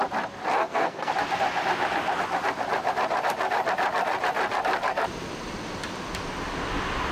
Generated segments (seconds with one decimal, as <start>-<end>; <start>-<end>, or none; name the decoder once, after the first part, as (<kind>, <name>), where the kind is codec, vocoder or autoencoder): 0.6-1.1 (codec, SNAC)